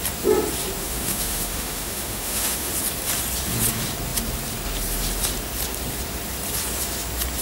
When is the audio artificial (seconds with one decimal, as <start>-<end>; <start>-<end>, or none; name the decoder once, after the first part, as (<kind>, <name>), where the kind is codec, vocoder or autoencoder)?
0.8-2.7 (autoencoder, DAC-VAE)